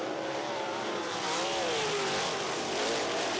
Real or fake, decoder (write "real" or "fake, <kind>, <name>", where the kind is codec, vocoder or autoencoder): fake, vocoder, BigVGAN v2